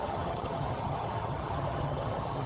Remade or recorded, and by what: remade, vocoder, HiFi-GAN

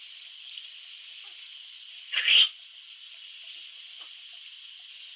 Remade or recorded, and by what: recorded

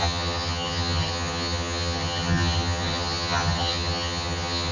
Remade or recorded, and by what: remade, vocoder, HiFi-GAN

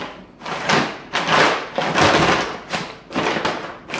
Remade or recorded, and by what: recorded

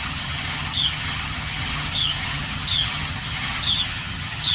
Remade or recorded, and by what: remade, vocoder, HiFi-GAN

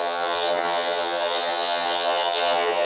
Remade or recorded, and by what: remade, vocoder, HiFi-GAN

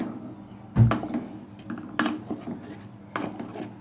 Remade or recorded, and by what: recorded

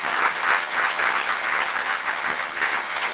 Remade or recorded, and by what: remade, vocoder, HiFi-GAN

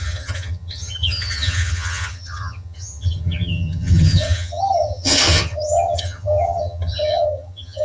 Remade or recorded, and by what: remade, vocoder, HiFi-GAN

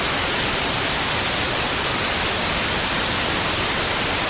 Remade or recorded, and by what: recorded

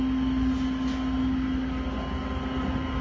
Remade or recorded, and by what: recorded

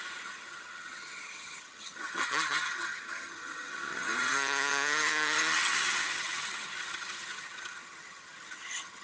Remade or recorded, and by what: remade, vocoder, HiFi-GAN